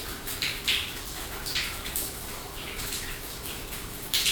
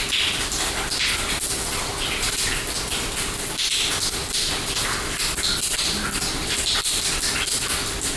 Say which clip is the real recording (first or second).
second